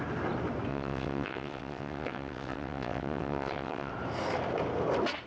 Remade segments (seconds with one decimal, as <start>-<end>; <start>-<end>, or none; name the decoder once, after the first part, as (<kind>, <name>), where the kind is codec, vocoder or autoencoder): 0.7-3.9 (vocoder, WaveNeXt)